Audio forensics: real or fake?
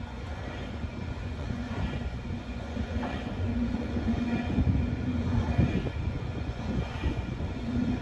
fake